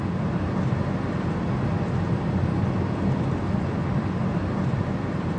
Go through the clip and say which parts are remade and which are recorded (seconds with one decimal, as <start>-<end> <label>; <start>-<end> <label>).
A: 0.0-0.8 remade; 0.8-4.0 recorded; 4.0-5.4 remade